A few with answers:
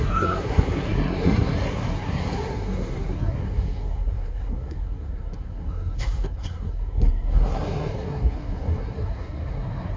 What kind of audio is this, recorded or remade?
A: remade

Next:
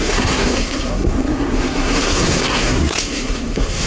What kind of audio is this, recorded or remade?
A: remade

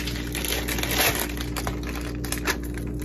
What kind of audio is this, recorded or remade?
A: recorded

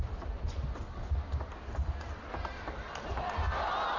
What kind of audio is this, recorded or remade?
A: recorded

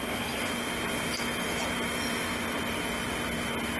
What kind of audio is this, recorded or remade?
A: recorded